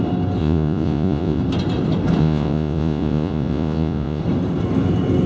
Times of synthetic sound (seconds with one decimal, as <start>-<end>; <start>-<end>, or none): 0.4-1.4; 2.2-4.2